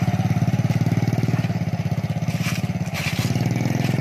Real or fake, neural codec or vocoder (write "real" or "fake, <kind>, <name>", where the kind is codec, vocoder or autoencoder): real